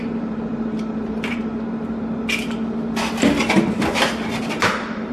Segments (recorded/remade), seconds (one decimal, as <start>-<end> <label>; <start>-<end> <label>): 0.0-1.5 remade; 1.5-4.6 recorded; 4.6-5.1 remade